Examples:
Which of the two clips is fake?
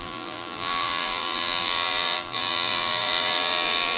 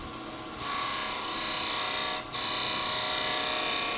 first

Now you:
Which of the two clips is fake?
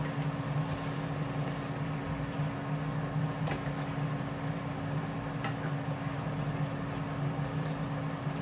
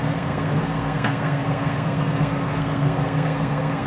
second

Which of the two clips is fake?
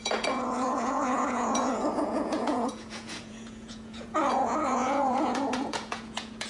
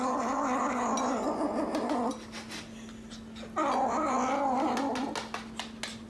first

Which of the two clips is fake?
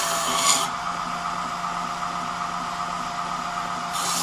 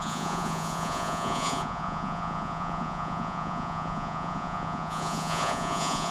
second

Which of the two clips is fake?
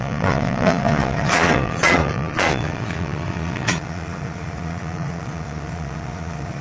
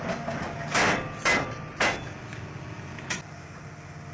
first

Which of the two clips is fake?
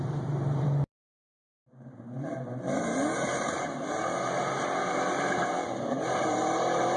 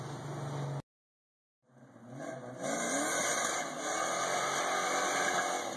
first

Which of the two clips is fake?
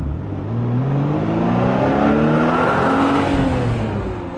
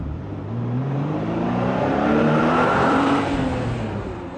second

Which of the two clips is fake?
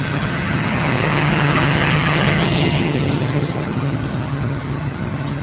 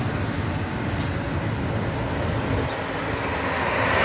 first